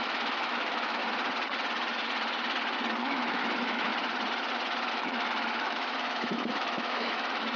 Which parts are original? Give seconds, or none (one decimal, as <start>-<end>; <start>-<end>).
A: 1.0-3.0; 3.9-4.9

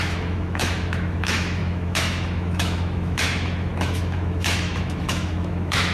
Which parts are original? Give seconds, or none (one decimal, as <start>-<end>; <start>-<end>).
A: none

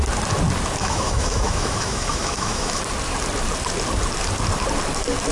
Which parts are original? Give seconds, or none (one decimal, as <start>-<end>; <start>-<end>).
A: 0.0-0.8; 2.8-5.3

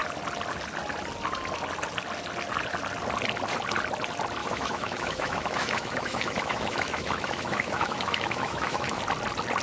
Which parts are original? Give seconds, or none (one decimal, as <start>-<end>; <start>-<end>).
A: 0.0-4.4; 9.0-9.6

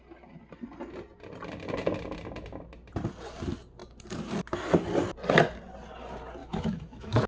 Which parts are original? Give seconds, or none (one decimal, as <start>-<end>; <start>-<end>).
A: 0.0-6.4

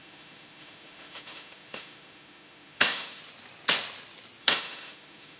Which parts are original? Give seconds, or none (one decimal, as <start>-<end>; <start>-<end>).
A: 3.2-4.4

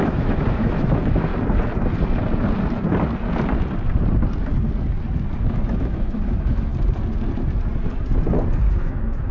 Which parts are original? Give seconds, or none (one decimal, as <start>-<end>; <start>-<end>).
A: 1.3-5.4; 6.7-8.7